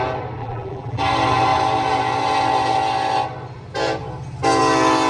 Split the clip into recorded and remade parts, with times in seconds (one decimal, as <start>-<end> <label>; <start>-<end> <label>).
0.0-0.4 recorded; 0.4-1.0 remade; 1.0-5.1 recorded